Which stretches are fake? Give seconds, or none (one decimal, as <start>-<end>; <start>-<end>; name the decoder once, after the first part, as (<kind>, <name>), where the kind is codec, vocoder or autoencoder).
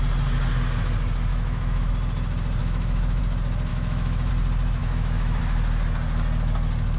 1.3-1.9 (autoencoder, DAC-VAE); 2.6-3.2; 3.7-4.3; 4.8-5.4